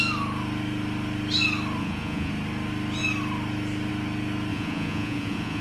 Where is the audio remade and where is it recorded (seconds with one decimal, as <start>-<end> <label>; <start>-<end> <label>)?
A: 0.0-1.8 recorded; 1.8-2.3 remade; 2.3-4.5 recorded; 4.5-5.6 remade